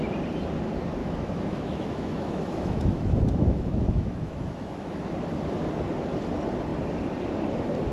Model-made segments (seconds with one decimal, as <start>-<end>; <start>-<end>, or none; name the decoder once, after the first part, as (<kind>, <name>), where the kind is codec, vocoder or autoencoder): 1.0-5.1 (autoencoder, DAC-VAE)